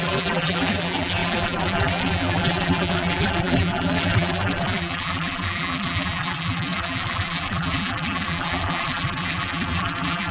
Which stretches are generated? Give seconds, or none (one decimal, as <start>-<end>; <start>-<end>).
0.0-10.3